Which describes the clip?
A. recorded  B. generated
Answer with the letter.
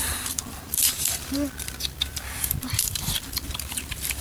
B